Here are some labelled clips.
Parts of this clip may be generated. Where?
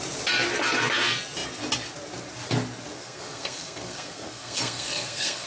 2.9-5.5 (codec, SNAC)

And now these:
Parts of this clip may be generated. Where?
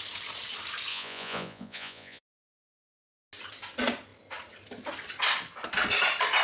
0.9-2.7 (vocoder, Vocos)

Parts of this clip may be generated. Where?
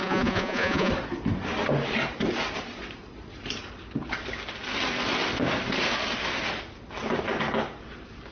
0.0-0.9 (vocoder, Vocos)